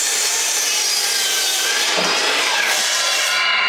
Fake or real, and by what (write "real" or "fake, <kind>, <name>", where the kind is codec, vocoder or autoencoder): fake, vocoder, BigVGAN v2